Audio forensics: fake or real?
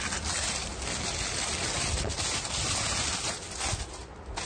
real